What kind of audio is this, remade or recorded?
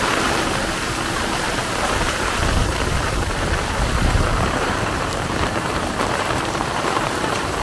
remade